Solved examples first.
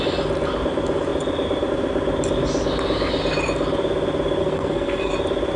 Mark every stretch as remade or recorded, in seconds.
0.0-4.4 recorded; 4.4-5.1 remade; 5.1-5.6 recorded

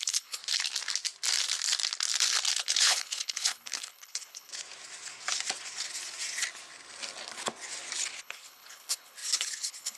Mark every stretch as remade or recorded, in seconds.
0.0-0.4 remade; 0.4-2.5 recorded; 2.5-4.5 remade; 4.5-8.2 recorded; 8.2-10.0 remade

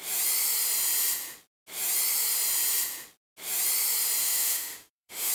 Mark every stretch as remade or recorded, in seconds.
0.0-4.2 recorded; 4.2-5.3 remade

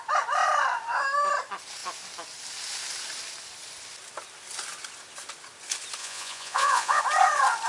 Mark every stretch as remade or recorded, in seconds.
0.0-6.0 recorded; 6.0-7.0 remade; 7.0-7.7 recorded

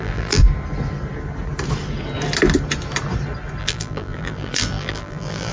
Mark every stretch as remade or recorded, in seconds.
0.0-0.4 remade; 0.4-3.6 recorded; 3.6-5.5 remade